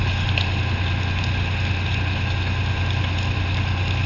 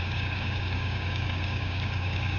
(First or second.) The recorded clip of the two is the first